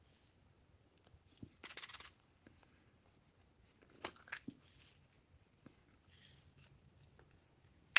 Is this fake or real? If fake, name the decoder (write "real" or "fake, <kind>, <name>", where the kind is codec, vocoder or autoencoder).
real